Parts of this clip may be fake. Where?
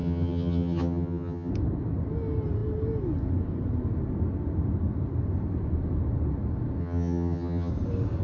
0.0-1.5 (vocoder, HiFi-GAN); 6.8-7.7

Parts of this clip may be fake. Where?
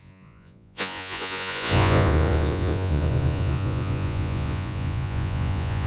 0.0-5.9 (vocoder, Vocos)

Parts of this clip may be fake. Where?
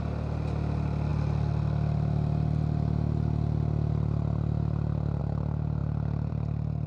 none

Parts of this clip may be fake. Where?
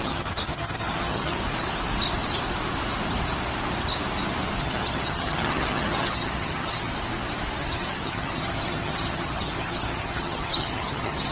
0.0-1.4 (vocoder, HiFi-GAN); 4.6-6.9; 7.6-11.3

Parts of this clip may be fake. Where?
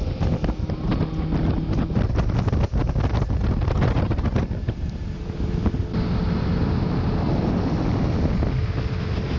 none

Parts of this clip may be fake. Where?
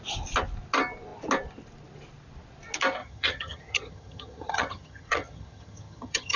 3.0-6.4 (vocoder, HiFi-GAN)